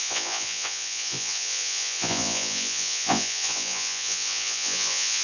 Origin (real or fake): fake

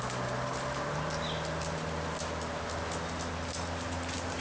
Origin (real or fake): real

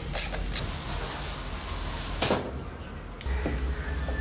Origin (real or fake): real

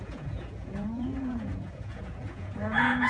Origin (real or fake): fake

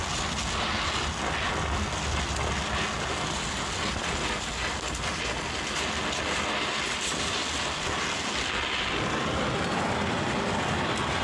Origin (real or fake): real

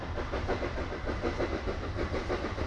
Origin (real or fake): real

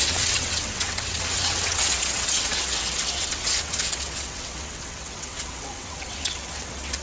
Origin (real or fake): fake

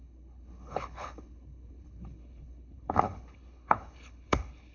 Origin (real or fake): fake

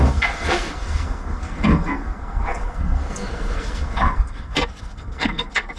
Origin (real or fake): fake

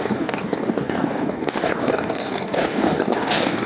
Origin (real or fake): fake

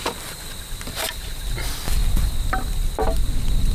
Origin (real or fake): real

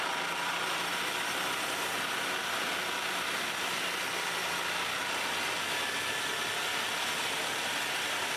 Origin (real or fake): real